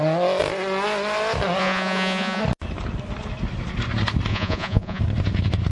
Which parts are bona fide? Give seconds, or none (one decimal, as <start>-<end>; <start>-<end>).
0.0-1.6; 2.4-4.3; 5.0-5.7